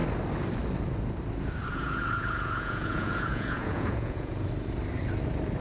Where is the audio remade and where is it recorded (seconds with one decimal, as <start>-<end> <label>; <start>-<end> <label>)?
0.0-1.7 recorded; 1.7-4.5 remade; 4.5-5.6 recorded